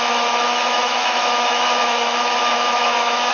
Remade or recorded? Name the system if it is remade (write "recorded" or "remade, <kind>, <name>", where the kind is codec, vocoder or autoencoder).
remade, autoencoder, DAC-VAE